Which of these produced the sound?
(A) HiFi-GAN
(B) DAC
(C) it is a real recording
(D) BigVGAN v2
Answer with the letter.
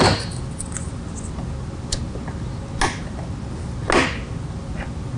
C